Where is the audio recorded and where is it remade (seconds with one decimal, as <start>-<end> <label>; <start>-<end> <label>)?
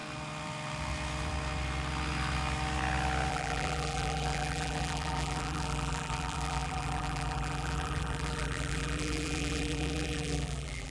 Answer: 0.0-3.3 recorded; 3.3-10.9 remade